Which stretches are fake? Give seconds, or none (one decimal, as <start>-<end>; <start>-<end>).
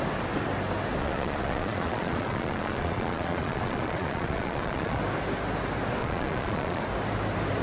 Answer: 1.0-5.0; 6.0-6.8